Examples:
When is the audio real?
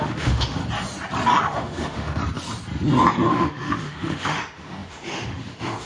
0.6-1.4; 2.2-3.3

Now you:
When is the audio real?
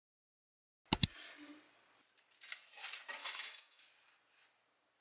0.0-3.2; 3.8-5.0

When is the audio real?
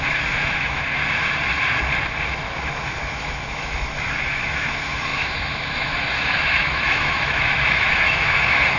1.0-2.6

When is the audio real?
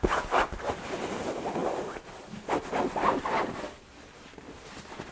0.0-5.1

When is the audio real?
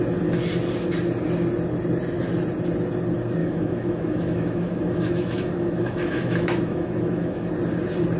0.0-3.4; 7.5-8.2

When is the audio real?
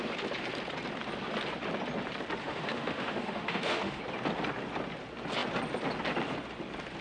0.0-2.4; 4.0-7.0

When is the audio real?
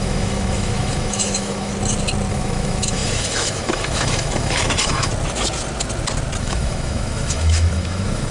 1.7-2.3; 5.1-6.4